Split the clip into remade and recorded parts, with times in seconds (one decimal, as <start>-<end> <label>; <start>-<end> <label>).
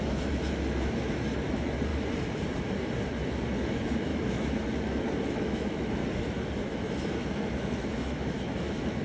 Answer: 0.0-1.9 remade; 1.9-3.6 recorded; 3.6-6.0 remade; 6.0-6.6 recorded; 6.6-9.0 remade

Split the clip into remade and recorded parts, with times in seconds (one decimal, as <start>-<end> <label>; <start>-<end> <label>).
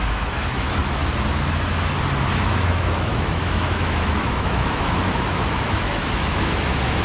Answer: 0.0-0.8 remade; 0.8-2.3 recorded; 2.3-7.0 remade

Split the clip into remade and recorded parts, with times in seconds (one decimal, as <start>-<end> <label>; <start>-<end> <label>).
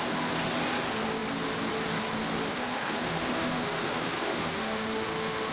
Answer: 0.0-2.5 recorded; 2.5-5.5 remade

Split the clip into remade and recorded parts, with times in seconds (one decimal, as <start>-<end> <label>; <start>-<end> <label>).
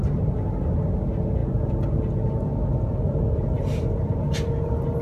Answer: 0.0-5.0 recorded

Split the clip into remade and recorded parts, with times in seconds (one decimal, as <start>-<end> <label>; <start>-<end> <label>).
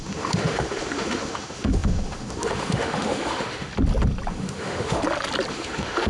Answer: 0.0-3.7 remade; 3.7-4.3 recorded; 4.3-5.0 remade; 5.0-5.5 recorded; 5.5-6.1 remade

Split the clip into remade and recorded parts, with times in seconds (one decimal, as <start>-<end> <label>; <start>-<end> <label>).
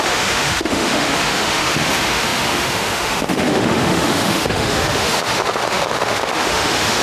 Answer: 0.0-7.0 remade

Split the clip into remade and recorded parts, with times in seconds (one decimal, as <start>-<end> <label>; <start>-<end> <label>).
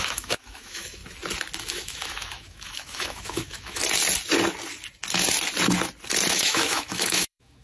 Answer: 0.0-1.0 remade; 1.0-1.6 recorded; 1.6-3.8 remade; 3.8-6.3 recorded; 6.3-7.6 remade